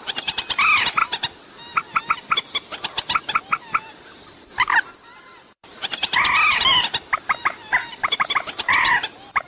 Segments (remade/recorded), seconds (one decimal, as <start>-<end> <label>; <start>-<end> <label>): 0.0-5.6 recorded; 5.6-6.2 remade; 6.2-9.5 recorded

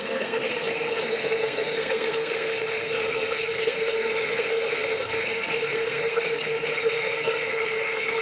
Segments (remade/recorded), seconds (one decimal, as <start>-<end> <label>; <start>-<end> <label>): 0.0-8.2 remade

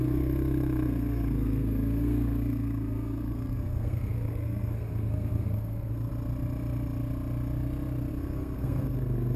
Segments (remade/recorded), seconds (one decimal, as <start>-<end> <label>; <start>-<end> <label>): 0.0-6.1 remade; 6.1-8.1 recorded; 8.1-9.4 remade

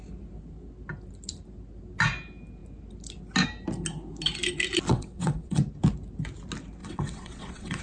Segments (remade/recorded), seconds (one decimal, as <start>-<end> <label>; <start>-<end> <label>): 0.0-4.9 recorded; 4.9-5.6 remade; 5.6-6.8 recorded; 6.8-7.8 remade

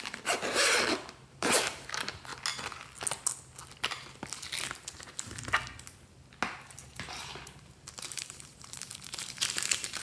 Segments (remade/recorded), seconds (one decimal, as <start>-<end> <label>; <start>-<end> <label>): 0.0-2.3 remade; 2.3-6.9 recorded; 6.9-10.0 remade

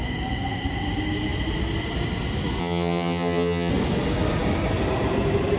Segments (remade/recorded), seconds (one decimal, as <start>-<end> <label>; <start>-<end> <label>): 0.0-2.6 recorded; 2.6-3.7 remade; 3.7-5.6 recorded